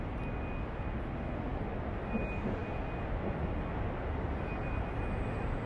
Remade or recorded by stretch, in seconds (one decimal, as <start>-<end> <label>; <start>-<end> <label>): 0.0-5.7 recorded